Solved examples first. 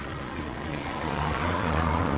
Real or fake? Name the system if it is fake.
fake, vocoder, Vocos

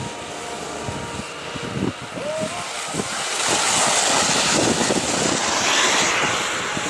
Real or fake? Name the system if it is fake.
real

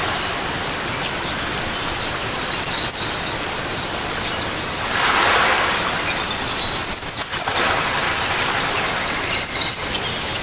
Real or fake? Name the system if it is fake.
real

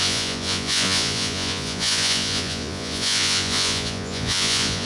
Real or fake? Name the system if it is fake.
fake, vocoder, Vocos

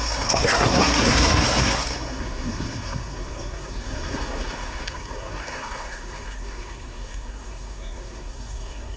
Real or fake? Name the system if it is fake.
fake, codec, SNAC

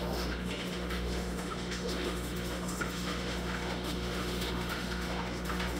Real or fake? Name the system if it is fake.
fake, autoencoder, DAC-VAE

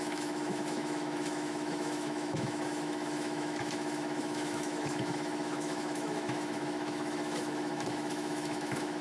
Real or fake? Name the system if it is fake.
fake, autoencoder, DAC-VAE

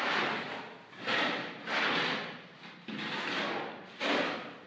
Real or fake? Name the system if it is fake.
real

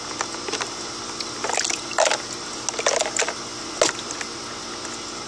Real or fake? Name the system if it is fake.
real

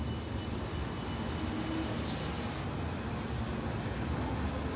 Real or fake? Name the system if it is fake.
real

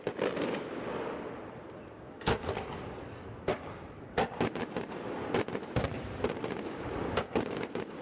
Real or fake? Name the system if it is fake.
fake, vocoder, BigVGAN v2